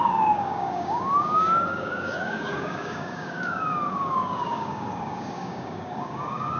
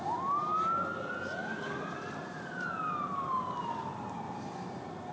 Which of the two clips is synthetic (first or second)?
first